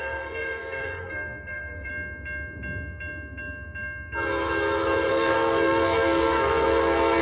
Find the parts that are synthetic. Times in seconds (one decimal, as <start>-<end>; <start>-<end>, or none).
0.0-1.9; 5.1-7.2